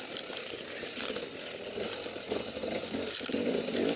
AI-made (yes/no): no